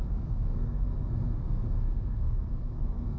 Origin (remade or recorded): remade